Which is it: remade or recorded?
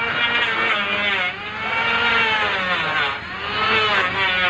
recorded